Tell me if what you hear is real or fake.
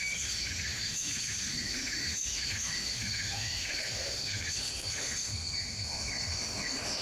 fake